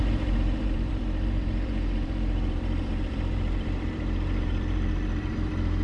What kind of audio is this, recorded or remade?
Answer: remade